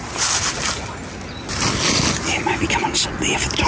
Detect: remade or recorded recorded